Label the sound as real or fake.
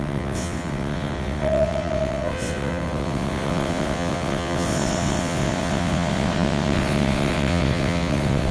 fake